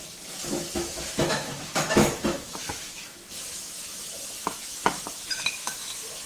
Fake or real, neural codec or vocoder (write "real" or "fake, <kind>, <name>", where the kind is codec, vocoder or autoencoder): fake, autoencoder, DAC-VAE